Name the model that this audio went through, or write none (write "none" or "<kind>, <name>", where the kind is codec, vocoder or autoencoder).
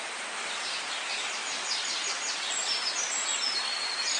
vocoder, BigVGAN v2